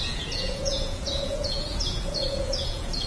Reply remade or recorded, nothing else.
remade